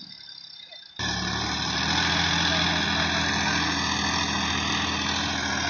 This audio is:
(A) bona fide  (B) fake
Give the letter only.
A